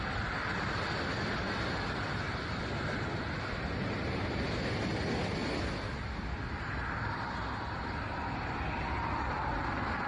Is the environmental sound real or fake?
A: real